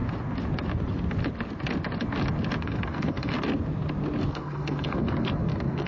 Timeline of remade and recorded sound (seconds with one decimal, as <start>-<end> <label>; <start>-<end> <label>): 0.0-2.6 recorded; 2.6-3.3 remade; 3.3-4.3 recorded; 4.3-5.9 remade